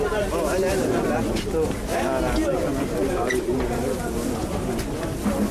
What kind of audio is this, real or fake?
real